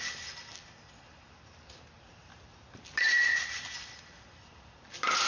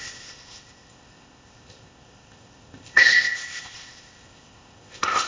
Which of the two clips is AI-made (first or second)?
second